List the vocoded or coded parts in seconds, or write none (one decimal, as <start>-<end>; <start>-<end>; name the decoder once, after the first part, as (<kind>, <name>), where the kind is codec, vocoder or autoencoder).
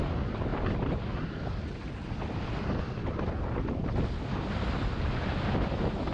none